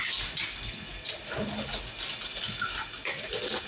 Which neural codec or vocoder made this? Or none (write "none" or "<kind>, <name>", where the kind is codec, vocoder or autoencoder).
none